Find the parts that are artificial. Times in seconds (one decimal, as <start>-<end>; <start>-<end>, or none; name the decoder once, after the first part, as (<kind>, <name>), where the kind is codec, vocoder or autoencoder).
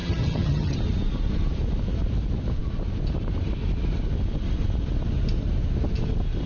0.0-0.8 (vocoder, HiFi-GAN)